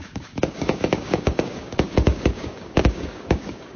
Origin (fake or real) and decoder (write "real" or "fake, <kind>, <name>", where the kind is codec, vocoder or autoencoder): fake, codec, DAC